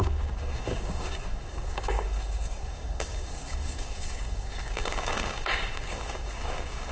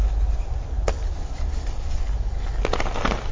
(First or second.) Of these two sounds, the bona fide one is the second